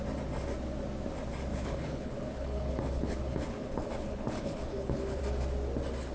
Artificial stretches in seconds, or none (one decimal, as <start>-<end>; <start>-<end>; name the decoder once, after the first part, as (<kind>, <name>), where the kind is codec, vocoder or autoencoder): 1.5-5.2 (codec, HILCodec)